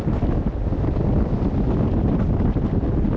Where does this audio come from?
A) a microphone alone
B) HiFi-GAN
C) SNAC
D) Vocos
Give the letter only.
A